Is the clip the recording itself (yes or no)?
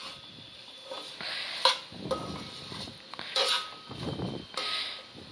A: yes